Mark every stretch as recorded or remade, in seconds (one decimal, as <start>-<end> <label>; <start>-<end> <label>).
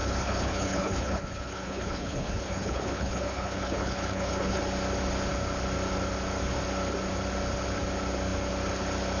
0.0-4.6 remade; 4.6-9.2 recorded